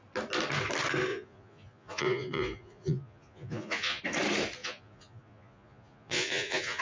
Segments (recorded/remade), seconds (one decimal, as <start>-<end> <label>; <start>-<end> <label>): 0.0-1.1 recorded; 1.1-4.0 remade; 4.0-4.6 recorded; 4.6-6.8 remade